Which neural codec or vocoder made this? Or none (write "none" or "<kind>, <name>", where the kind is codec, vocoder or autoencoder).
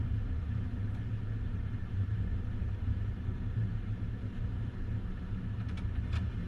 vocoder, BigVGAN v2